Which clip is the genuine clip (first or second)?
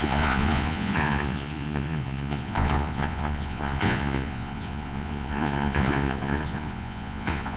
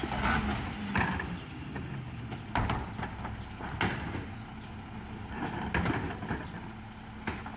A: second